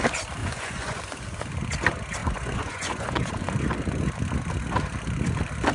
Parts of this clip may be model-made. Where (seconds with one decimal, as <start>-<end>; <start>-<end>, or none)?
0.4-1.0; 2.2-3.3

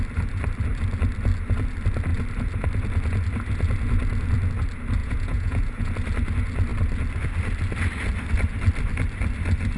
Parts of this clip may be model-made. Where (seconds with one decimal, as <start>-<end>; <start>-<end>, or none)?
5.0-5.9

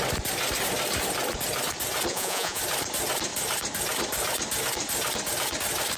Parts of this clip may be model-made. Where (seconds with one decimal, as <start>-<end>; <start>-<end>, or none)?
2.1-2.6